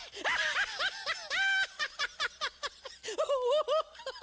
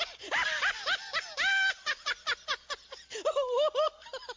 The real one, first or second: first